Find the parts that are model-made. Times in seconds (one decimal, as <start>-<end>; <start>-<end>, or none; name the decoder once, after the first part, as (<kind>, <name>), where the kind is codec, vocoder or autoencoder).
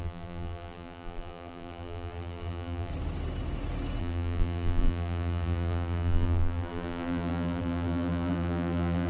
0.0-2.9 (vocoder, BigVGAN v2); 4.0-9.1